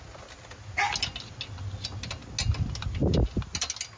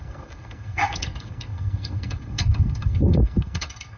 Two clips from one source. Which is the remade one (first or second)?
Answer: second